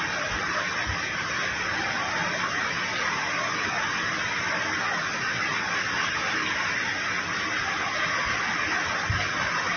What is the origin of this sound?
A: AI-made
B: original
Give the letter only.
B